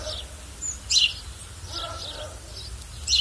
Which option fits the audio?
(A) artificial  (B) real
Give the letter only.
B